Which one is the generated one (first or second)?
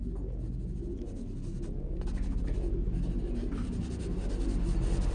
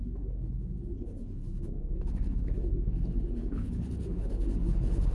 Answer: second